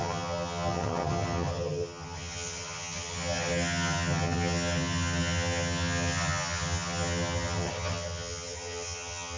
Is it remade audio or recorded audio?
remade